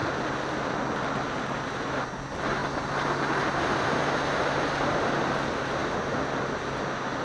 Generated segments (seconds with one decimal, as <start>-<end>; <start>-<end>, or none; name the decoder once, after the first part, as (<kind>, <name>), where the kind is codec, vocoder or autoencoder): none